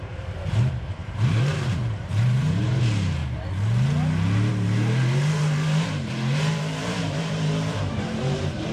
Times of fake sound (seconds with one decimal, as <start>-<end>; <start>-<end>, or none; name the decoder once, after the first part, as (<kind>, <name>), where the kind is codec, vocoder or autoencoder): 0.0-3.2 (vocoder, BigVGAN v2); 4.5-8.7